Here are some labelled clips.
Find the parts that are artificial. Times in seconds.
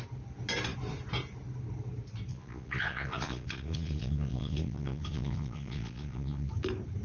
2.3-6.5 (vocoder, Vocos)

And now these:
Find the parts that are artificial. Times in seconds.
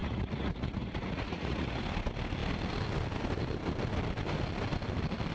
0.0-1.8 (vocoder, Vocos)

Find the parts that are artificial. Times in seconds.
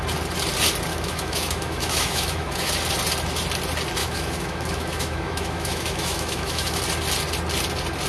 0.9-2.7 (autoencoder, DAC-VAE); 4.0-6.8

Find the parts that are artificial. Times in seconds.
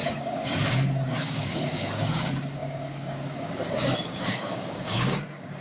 0.0-5.6 (codec, DAC)